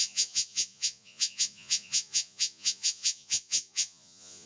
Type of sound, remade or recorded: remade